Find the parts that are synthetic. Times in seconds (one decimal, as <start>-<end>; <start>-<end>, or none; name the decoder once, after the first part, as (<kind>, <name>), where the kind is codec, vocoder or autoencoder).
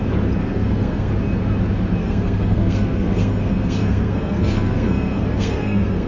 0.4-1.1 (codec, SNAC); 2.0-6.1